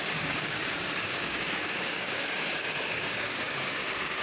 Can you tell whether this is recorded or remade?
remade